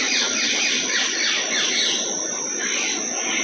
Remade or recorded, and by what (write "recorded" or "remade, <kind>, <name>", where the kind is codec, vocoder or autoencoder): recorded